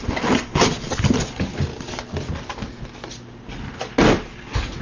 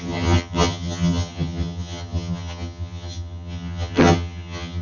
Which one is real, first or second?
first